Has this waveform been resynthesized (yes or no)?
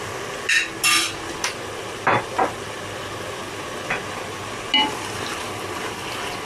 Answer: no